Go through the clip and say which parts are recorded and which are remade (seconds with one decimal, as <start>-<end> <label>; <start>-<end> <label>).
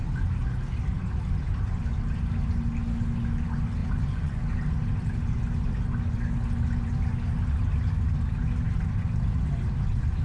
0.0-3.8 recorded; 3.8-4.4 remade; 4.4-10.2 recorded